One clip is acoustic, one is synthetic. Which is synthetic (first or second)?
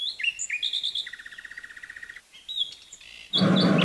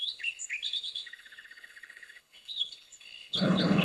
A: second